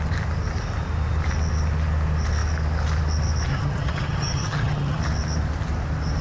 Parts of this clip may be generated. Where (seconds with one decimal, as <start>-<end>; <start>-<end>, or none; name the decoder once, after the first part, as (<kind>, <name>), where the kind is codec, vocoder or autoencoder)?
3.5-5.0 (vocoder, HiFi-GAN)

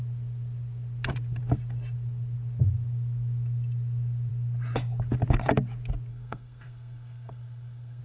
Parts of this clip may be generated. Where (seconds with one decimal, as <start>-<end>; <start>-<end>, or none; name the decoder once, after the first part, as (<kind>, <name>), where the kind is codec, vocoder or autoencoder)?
6.1-8.0 (codec, SNAC)